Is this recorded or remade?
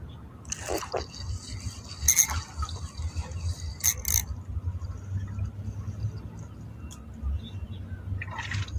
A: recorded